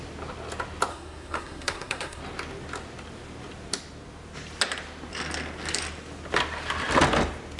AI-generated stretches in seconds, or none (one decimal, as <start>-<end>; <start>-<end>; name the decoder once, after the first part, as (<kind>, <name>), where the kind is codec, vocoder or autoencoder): 0.9-2.2 (codec, SNAC)